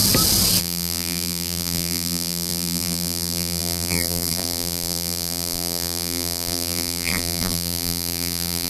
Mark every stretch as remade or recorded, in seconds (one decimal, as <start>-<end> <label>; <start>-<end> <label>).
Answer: 0.0-0.6 recorded; 0.6-8.7 remade

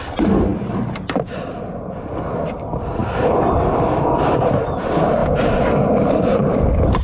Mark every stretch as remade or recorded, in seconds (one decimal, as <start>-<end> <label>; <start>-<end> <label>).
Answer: 0.0-5.2 remade; 5.2-6.0 recorded; 6.0-7.0 remade

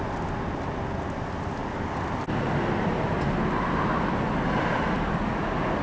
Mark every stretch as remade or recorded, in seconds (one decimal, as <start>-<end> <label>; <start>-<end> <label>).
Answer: 0.0-1.6 recorded; 1.6-5.1 remade; 5.1-5.8 recorded

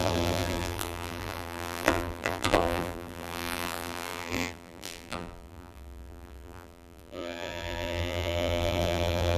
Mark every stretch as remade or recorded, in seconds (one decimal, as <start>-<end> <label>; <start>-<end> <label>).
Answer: 0.0-9.4 remade

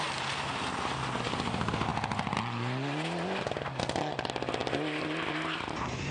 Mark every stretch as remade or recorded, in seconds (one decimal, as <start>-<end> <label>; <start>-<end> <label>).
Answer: 0.0-4.6 recorded; 4.6-5.3 remade; 5.3-6.1 recorded

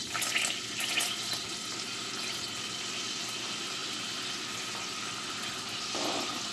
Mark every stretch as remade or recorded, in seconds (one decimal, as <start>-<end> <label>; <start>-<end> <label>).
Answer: 0.0-3.8 recorded; 3.8-4.7 remade; 4.7-6.5 recorded

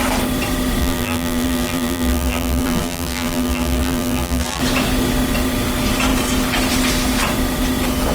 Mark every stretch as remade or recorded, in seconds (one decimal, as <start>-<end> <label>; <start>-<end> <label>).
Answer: 0.0-0.8 recorded; 0.8-4.6 remade; 4.6-8.1 recorded

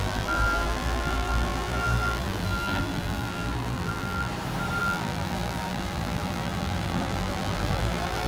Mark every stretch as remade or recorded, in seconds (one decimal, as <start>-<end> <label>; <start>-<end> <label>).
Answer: 0.0-4.3 remade; 4.3-4.8 recorded; 4.8-8.3 remade